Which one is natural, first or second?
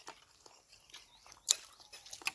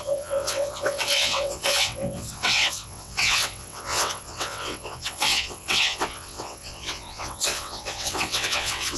first